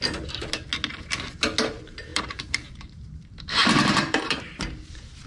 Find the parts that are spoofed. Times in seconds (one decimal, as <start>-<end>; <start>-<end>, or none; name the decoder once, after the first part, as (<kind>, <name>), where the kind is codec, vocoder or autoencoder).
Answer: 2.1-5.3 (vocoder, BigVGAN v2)